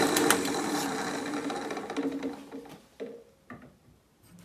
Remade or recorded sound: recorded